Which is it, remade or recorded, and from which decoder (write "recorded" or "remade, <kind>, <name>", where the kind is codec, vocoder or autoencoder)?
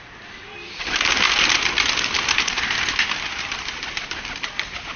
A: recorded